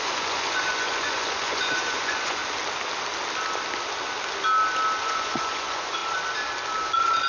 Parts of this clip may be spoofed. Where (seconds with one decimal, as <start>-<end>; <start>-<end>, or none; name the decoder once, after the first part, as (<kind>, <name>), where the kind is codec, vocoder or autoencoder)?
0.0-2.4 (vocoder, Vocos); 5.0-6.0